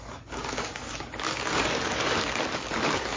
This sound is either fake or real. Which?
fake